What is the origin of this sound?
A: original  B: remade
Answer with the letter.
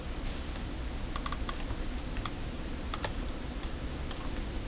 A